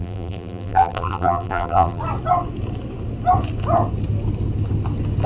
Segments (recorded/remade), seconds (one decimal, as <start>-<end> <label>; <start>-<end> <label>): 0.0-2.0 remade; 2.0-5.3 recorded